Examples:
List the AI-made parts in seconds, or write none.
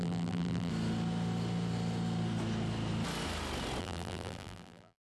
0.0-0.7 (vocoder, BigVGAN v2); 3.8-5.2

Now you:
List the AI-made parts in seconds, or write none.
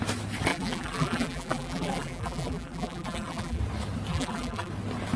0.5-3.6 (vocoder, BigVGAN v2); 4.1-4.7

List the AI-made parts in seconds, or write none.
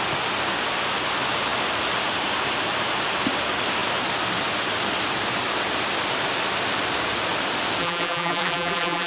7.8-9.1 (vocoder, BigVGAN v2)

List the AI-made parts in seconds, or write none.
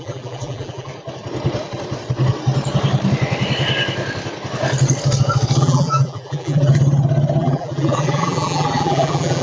0.0-0.9 (vocoder, BigVGAN v2); 5.6-6.7; 7.4-9.4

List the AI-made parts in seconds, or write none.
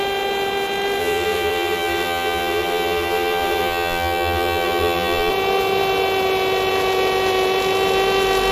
1.0-5.3 (vocoder, BigVGAN v2)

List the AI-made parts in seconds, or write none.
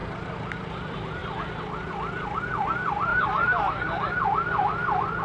0.6-1.2 (vocoder, BigVGAN v2); 1.9-3.1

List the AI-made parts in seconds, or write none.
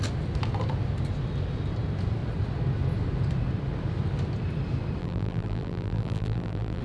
5.0-6.8 (vocoder, BigVGAN v2)